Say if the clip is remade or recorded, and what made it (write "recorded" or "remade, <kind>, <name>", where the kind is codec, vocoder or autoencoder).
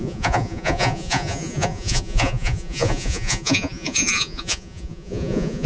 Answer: remade, vocoder, Vocos